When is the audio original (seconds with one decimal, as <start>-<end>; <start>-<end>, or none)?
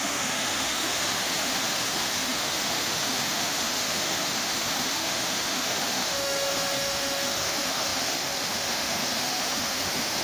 none